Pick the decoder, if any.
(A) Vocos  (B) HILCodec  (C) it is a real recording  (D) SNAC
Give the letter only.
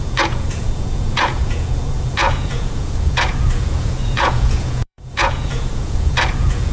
A